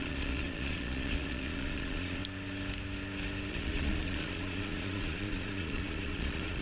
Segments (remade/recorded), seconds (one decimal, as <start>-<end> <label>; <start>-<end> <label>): 0.0-2.2 remade; 2.2-3.5 recorded; 3.5-6.6 remade